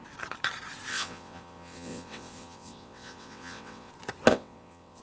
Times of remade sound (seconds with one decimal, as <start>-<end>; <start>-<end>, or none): 0.9-3.9; 4.3-5.0

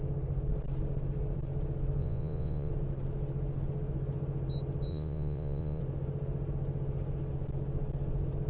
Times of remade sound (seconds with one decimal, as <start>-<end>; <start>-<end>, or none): 2.0-2.7; 4.9-5.8